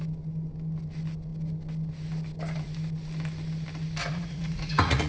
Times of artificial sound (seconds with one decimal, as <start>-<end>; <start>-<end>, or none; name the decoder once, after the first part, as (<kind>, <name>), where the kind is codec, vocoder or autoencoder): 4.0-5.1 (vocoder, Vocos)